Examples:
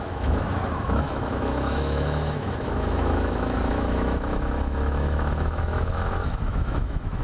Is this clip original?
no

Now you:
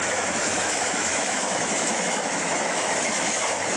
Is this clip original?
no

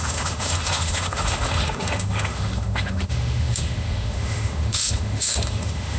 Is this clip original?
no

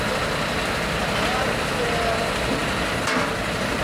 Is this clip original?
yes